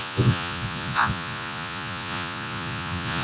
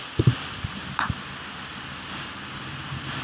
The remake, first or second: first